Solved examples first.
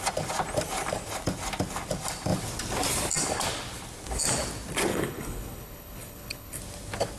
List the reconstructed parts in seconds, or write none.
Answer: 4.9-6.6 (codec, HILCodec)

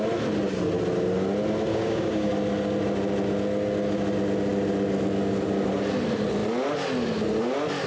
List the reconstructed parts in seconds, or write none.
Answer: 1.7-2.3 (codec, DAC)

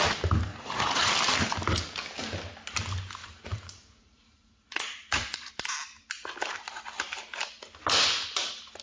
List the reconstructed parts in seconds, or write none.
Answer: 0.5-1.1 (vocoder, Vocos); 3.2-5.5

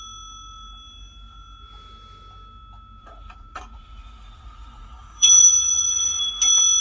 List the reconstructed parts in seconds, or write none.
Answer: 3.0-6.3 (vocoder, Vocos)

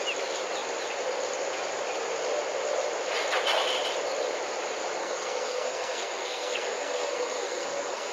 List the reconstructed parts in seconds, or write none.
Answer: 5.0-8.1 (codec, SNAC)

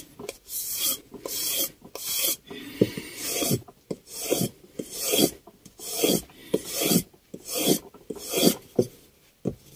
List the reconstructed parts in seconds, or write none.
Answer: none

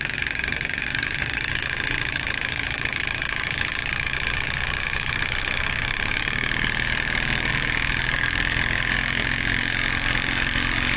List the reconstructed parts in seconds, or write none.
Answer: 0.0-11.0 (codec, DAC)